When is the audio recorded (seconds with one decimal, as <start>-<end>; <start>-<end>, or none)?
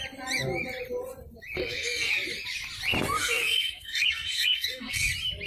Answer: 0.0-1.6; 2.1-3.2; 5.1-5.5